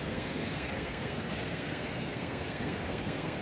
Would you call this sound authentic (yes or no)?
no